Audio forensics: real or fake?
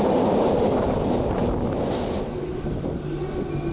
real